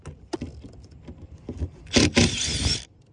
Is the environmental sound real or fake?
real